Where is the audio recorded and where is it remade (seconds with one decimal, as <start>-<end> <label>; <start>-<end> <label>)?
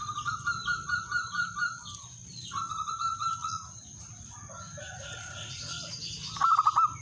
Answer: 0.0-3.4 recorded; 3.4-5.9 remade; 5.9-7.0 recorded